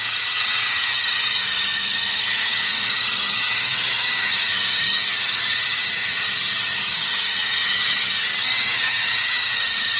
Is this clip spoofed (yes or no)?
yes